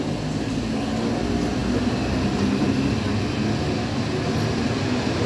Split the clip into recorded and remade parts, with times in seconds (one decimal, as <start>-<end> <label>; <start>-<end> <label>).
0.0-5.3 recorded